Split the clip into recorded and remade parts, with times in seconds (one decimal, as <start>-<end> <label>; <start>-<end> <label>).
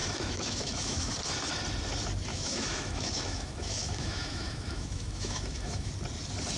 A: 0.0-1.1 remade; 1.1-2.3 recorded; 2.3-5.9 remade; 5.9-6.6 recorded